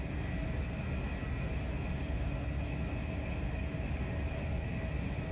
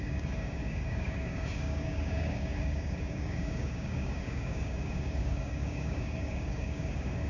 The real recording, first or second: first